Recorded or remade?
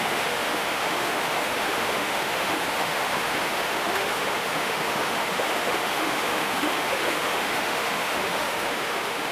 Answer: remade